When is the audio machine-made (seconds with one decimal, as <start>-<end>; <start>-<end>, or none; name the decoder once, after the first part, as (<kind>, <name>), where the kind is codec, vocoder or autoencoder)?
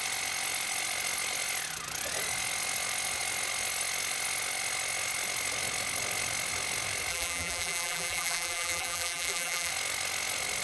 7.1-9.7 (vocoder, BigVGAN v2)